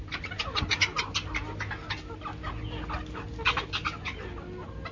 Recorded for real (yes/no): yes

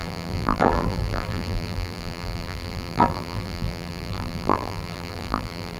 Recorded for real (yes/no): no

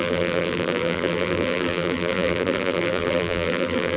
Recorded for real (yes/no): no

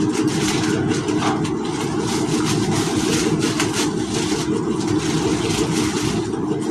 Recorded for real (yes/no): yes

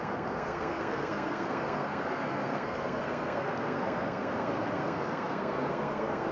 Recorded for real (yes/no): no